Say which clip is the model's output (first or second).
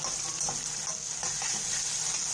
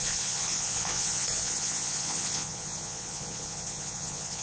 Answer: second